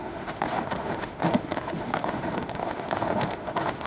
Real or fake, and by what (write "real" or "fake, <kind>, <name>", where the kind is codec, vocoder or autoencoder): fake, autoencoder, DAC-VAE